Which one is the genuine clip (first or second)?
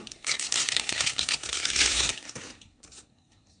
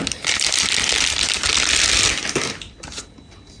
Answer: second